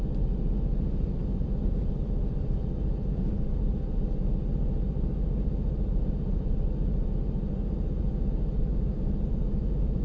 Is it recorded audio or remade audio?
remade